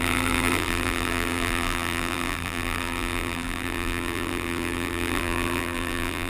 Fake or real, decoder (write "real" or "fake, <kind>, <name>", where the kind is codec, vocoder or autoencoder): fake, vocoder, BigVGAN v2